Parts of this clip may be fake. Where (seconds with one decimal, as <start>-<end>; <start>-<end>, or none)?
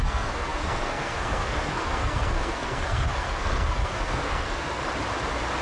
0.0-4.8